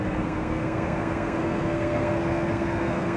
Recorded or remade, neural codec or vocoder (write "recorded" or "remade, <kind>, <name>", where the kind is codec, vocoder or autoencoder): remade, codec, SNAC